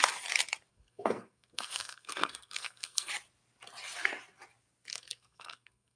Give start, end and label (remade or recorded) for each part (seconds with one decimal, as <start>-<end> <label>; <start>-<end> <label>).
0.0-0.7 recorded; 0.7-3.1 remade; 3.1-4.9 recorded; 4.9-6.0 remade